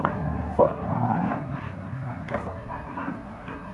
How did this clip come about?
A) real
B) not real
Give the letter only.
B